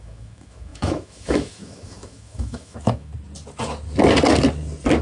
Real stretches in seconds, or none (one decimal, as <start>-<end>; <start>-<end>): 3.1-5.0